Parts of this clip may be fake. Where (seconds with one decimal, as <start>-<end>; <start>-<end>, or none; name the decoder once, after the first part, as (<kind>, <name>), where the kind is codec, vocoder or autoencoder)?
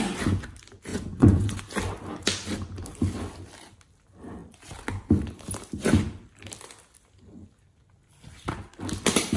0.9-1.6 (vocoder, Vocos)